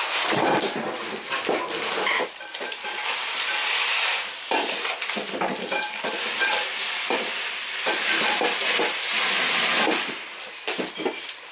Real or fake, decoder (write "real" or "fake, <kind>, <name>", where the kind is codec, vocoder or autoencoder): real